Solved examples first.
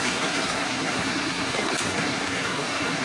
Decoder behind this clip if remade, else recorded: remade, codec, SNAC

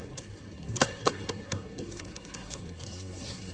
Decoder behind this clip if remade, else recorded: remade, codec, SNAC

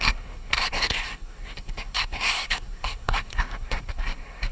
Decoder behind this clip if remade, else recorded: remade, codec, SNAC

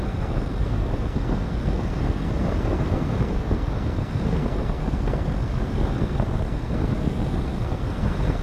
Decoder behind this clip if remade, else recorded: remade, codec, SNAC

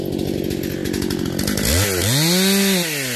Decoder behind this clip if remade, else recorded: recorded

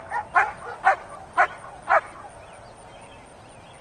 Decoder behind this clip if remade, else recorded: recorded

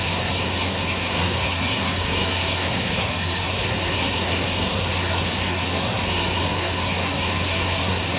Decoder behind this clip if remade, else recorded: remade, codec, SNAC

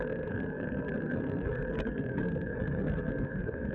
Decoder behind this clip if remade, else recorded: remade, codec, SNAC